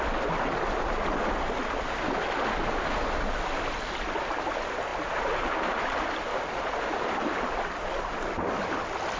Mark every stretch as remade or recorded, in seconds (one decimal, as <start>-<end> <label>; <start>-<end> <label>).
0.0-9.2 recorded